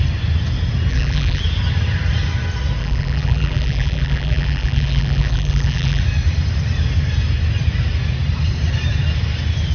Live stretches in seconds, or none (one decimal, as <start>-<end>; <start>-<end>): 0.0-0.9; 1.4-2.8; 6.0-9.7